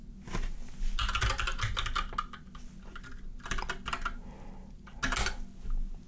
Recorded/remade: recorded